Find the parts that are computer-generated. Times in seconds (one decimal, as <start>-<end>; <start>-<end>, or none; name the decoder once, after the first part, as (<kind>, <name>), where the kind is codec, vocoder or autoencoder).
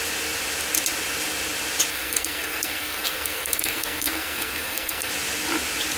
1.9-5.1 (codec, SNAC)